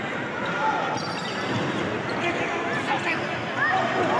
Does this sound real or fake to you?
real